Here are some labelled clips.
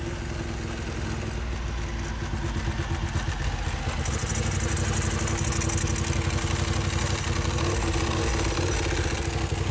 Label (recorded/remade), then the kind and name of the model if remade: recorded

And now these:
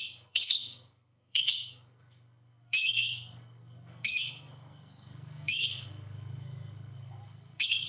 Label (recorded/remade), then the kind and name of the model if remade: remade, codec, SNAC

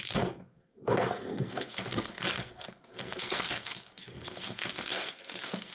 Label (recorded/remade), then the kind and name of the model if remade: remade, codec, SNAC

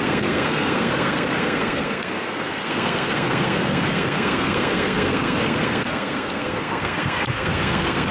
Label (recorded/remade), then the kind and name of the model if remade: remade, codec, SNAC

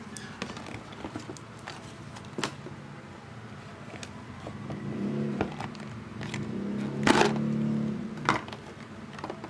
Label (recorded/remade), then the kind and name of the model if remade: recorded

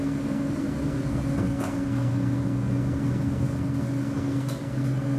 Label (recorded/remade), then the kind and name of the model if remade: remade, codec, SNAC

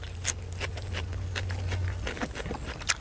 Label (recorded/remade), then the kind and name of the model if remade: recorded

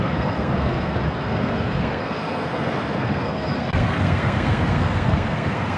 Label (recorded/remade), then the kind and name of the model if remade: remade, codec, SNAC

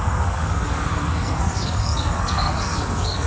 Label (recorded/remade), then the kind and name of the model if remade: remade, codec, SNAC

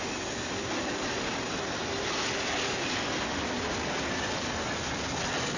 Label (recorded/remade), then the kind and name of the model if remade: recorded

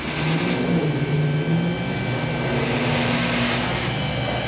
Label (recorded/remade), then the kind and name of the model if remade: recorded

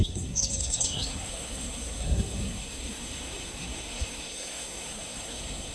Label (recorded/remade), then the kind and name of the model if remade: remade, codec, SNAC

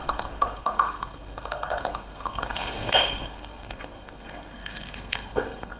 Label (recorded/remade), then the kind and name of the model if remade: remade, codec, SNAC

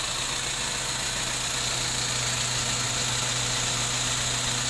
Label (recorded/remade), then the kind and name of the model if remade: recorded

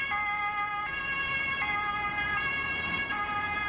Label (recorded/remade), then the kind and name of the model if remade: recorded